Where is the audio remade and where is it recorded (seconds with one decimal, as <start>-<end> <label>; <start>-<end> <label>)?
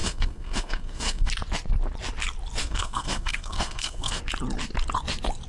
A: 0.0-1.3 remade; 1.3-2.6 recorded; 2.6-4.2 remade; 4.2-5.5 recorded